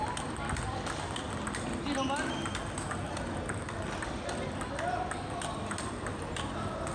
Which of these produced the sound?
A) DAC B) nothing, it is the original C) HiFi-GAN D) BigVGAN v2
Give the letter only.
B